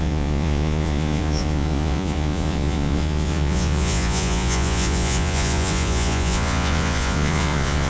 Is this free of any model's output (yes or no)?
no